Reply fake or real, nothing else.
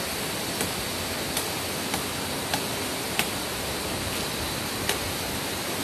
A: real